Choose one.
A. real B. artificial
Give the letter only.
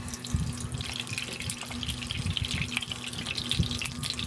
A